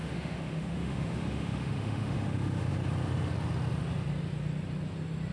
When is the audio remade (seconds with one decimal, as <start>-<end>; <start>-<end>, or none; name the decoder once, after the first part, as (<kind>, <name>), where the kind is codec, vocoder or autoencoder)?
0.0-2.7 (autoencoder, DAC-VAE)